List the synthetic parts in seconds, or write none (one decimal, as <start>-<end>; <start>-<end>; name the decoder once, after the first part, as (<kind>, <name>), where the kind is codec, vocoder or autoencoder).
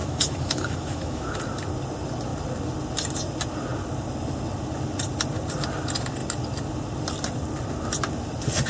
0.0-1.3 (autoencoder, DAC-VAE)